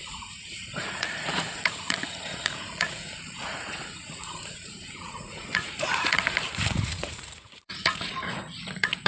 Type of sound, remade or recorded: remade